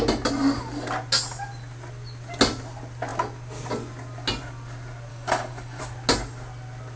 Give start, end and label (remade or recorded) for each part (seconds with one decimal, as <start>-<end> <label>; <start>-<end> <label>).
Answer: 0.0-5.1 recorded; 5.1-5.8 remade; 5.8-7.0 recorded